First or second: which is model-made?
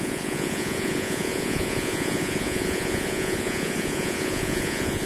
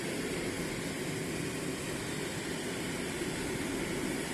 first